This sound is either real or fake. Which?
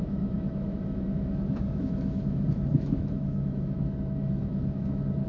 fake